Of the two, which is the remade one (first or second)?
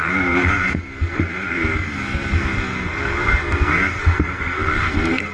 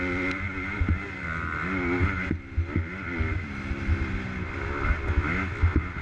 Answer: first